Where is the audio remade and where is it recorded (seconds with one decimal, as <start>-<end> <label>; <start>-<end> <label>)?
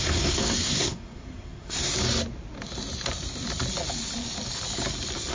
0.0-1.9 remade; 1.9-5.3 recorded